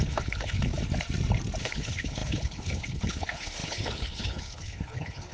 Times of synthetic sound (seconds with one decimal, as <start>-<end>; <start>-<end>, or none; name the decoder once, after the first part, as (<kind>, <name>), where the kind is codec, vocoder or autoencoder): 0.0-0.7 (codec, HILCodec); 1.6-5.3